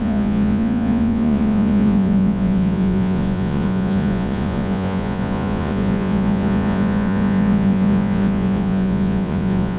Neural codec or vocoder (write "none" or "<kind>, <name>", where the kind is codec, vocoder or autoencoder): vocoder, Vocos